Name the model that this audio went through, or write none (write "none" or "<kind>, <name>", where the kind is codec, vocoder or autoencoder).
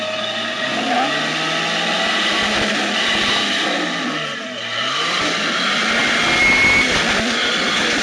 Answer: none